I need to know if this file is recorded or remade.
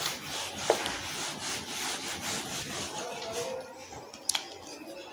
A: recorded